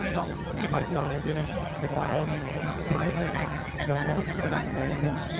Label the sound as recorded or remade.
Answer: remade